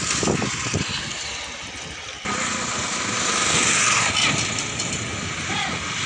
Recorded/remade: recorded